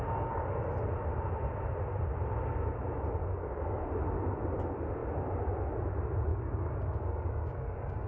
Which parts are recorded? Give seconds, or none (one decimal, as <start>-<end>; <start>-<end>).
0.0-3.2; 3.8-6.3